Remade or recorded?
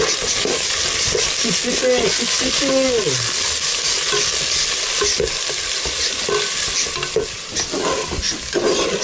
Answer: recorded